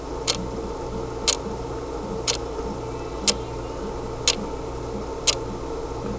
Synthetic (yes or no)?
no